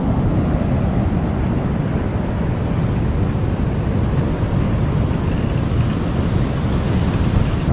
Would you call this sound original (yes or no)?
yes